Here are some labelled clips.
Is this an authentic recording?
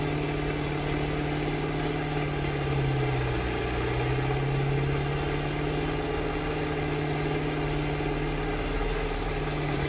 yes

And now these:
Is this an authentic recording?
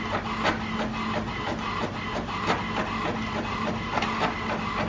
yes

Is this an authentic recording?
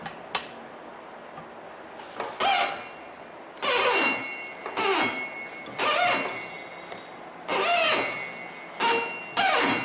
yes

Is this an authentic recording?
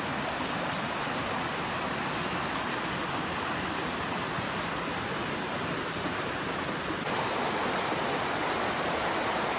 yes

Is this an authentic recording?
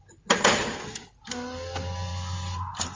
yes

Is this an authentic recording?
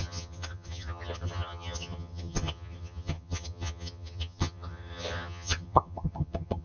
no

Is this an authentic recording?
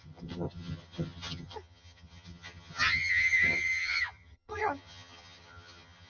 no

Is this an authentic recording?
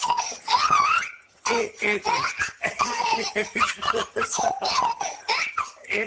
no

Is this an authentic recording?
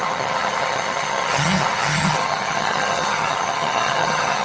no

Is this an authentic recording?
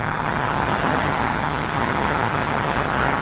no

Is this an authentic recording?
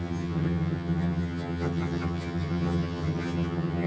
no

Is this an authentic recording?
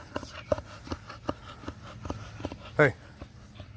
yes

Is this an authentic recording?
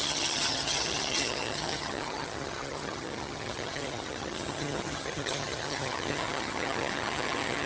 no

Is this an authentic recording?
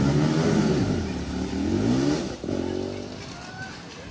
yes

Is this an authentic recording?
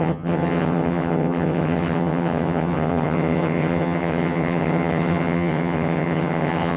no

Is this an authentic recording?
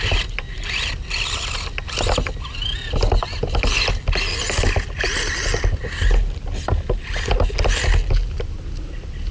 yes